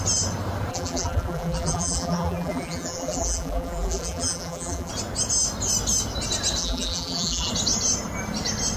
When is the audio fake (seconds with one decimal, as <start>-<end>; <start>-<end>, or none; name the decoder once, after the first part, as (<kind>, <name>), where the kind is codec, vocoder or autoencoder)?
0.7-4.9 (vocoder, BigVGAN v2); 6.6-7.5